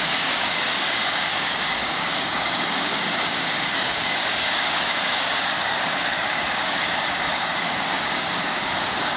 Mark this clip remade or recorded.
remade